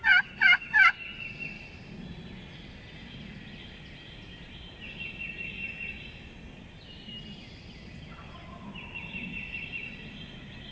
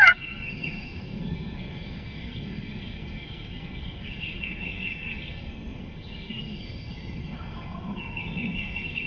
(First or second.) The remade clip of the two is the second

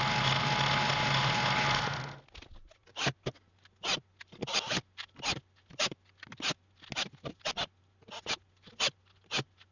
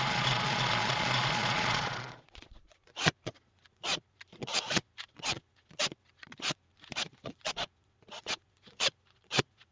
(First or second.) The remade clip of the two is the second